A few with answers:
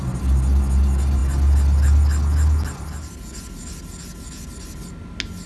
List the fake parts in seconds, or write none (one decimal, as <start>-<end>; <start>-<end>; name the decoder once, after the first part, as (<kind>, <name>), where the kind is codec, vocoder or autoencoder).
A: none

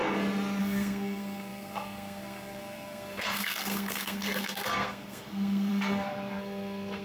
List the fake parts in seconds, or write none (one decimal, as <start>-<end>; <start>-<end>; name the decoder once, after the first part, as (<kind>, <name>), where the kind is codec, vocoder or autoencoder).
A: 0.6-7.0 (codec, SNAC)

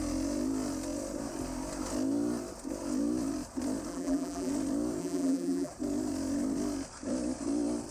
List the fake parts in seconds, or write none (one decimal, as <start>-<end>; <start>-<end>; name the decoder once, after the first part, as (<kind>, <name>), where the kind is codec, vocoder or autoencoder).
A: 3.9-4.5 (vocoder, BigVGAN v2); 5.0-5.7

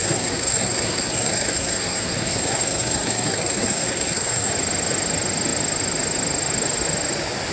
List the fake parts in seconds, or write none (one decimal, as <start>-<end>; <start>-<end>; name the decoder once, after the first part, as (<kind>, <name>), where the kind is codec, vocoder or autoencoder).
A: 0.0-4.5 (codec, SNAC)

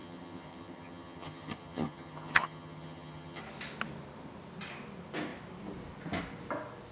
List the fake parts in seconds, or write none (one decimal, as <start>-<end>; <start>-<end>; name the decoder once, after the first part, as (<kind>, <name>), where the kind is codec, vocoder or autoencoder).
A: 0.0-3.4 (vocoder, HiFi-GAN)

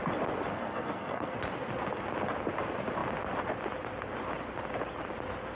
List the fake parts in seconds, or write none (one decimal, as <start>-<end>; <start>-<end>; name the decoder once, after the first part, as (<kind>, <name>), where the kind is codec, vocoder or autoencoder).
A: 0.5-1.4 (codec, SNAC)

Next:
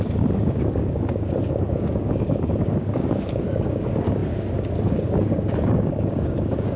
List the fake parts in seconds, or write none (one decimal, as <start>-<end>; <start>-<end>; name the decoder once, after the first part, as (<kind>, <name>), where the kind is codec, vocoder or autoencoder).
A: 0.0-6.8 (codec, DAC)